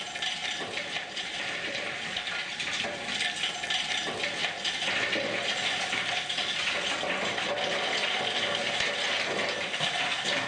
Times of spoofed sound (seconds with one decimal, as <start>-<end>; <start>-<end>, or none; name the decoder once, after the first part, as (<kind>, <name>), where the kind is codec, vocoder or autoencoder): 0.4-3.1 (vocoder, BigVGAN v2); 4.4-5.2